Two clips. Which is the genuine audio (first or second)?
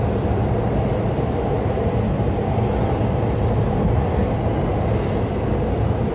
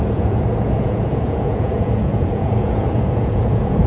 first